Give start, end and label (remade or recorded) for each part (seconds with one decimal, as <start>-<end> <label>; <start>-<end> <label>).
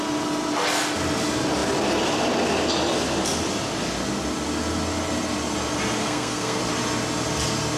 0.0-6.0 recorded; 6.0-6.6 remade; 6.6-7.8 recorded